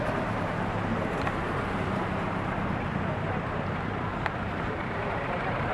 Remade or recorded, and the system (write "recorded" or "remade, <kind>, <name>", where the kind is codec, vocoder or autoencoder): remade, vocoder, BigVGAN v2